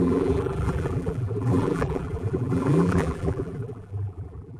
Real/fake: fake